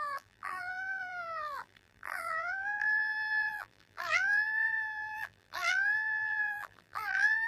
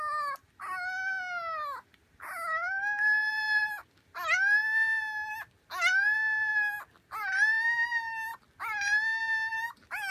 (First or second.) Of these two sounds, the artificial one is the first